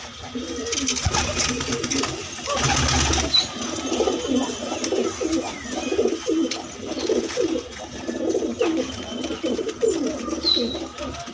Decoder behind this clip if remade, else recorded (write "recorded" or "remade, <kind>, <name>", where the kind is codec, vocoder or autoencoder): recorded